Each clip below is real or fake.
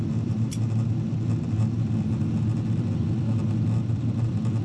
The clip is real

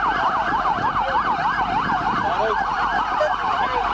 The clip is real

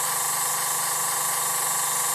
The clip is real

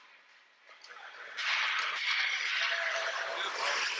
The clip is real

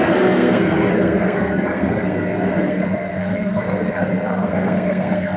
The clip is fake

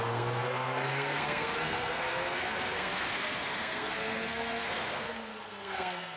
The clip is fake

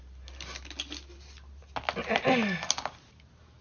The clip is real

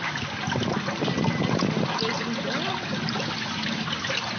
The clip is real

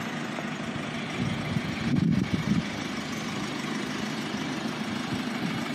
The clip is real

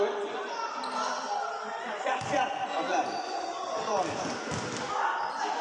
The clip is real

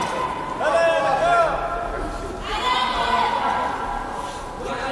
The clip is real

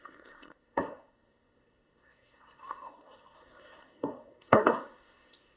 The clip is fake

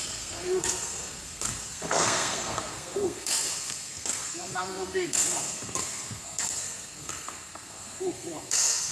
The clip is fake